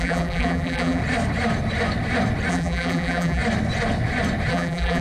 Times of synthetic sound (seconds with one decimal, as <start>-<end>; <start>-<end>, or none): 0.0-1.0; 2.5-3.4; 4.5-5.0